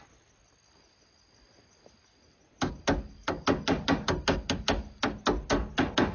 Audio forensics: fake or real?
real